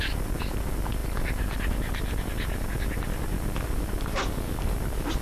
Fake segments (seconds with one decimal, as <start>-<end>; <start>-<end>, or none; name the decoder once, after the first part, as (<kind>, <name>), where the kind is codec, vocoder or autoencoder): none